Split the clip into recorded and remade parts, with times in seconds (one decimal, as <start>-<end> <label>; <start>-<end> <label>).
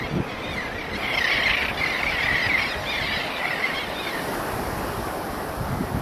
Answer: 0.0-6.0 recorded